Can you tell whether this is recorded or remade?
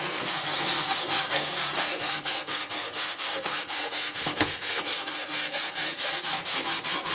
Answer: remade